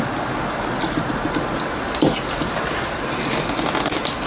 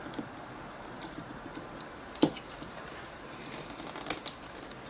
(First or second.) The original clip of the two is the first